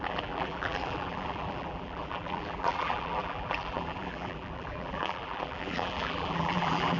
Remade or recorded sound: remade